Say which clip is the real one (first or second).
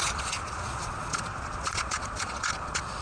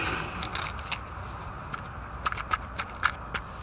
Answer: second